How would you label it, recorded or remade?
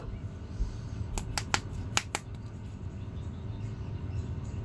recorded